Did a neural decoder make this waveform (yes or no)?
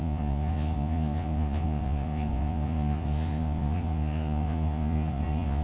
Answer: yes